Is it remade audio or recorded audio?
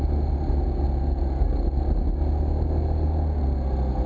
recorded